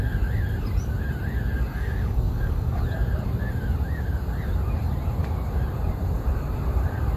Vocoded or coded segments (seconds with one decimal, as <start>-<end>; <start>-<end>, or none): 1.7-2.8